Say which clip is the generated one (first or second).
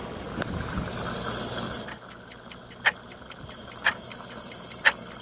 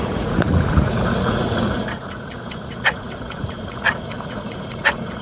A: second